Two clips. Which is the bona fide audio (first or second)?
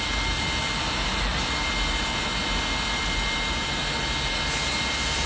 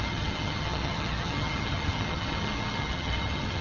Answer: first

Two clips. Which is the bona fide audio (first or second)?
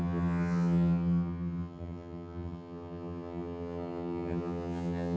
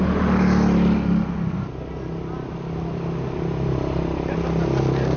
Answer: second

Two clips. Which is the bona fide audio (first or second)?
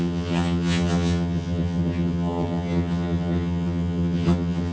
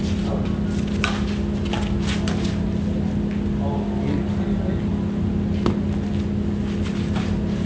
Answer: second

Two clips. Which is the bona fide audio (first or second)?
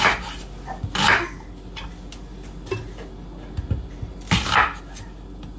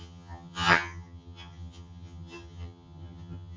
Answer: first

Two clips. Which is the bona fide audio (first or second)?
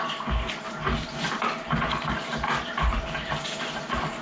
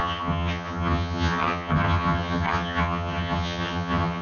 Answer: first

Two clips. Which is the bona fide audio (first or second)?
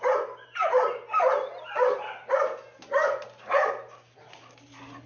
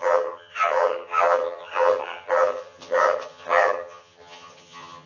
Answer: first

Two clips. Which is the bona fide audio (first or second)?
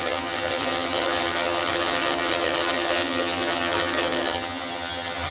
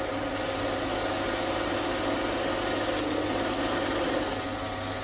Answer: second